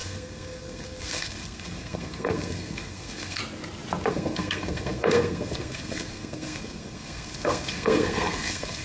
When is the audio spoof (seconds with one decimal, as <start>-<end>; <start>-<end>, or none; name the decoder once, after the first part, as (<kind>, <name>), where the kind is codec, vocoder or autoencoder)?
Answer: 0.0-3.4 (codec, SNAC); 4.1-8.8